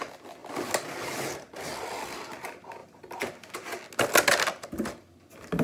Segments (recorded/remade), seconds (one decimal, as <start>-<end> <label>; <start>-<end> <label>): 0.0-2.8 recorded; 2.8-3.5 remade; 3.5-5.6 recorded